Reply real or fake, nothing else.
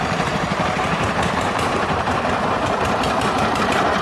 fake